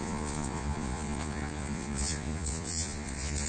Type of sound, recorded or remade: remade